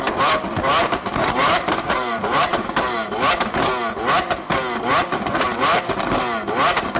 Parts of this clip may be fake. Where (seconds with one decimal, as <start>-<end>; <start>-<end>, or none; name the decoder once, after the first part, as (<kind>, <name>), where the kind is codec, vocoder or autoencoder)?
0.8-3.3 (vocoder, BigVGAN v2)